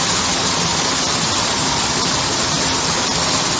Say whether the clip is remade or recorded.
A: recorded